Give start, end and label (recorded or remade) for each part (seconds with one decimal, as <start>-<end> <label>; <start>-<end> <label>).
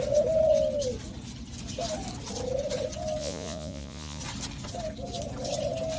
0.0-3.2 recorded; 3.2-4.2 remade; 4.2-6.0 recorded